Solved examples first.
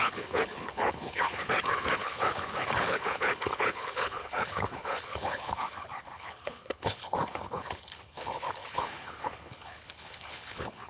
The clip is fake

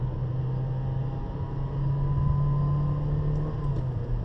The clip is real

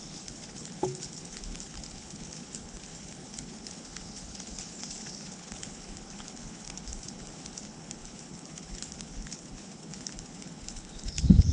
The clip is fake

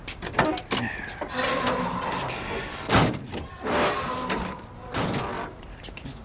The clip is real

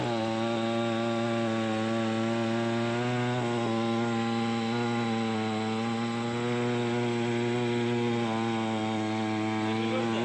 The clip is real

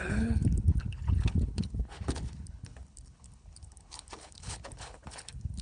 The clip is fake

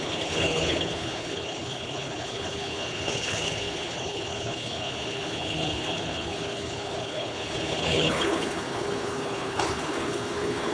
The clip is fake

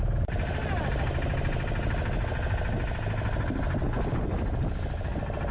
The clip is real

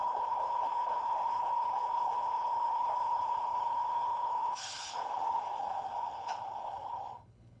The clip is fake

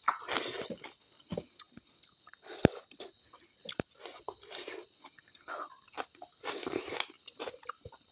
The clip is real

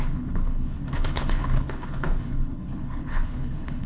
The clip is fake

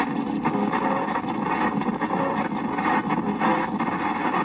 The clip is real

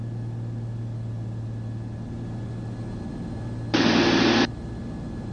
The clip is real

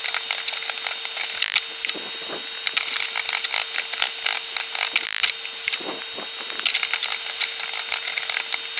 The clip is real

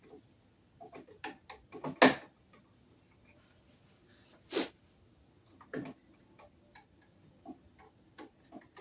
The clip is real